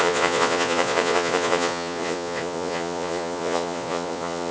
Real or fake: fake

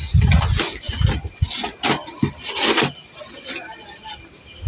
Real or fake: real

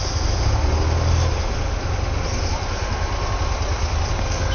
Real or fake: real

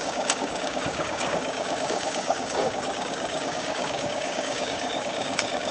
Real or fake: fake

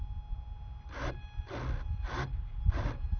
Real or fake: real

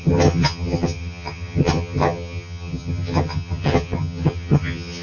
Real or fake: fake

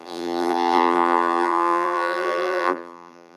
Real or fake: fake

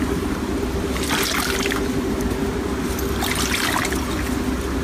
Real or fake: real